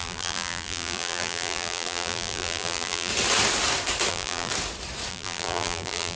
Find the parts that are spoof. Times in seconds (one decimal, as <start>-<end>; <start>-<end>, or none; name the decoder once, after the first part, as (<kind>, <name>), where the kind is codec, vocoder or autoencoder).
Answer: 0.0-3.1 (vocoder, BigVGAN v2); 4.1-4.5; 5.1-6.2